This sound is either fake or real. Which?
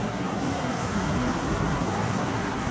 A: fake